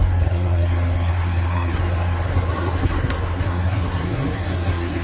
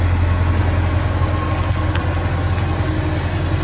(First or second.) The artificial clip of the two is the first